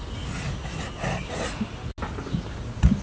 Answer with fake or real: real